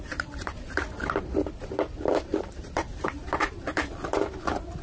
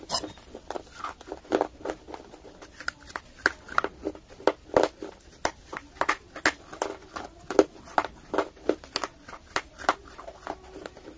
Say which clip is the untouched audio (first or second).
second